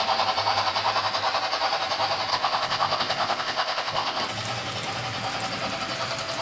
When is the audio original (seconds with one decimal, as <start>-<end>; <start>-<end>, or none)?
0.0-2.3; 4.2-6.4